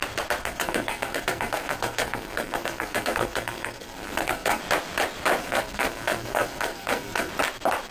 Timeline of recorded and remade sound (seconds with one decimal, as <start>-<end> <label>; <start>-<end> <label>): 0.0-0.4 recorded; 0.4-4.6 remade; 4.6-5.4 recorded; 5.4-7.3 remade; 7.3-7.9 recorded